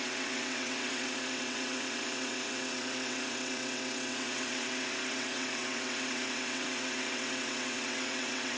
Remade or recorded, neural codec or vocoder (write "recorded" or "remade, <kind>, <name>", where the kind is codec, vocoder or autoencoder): remade, vocoder, WaveNeXt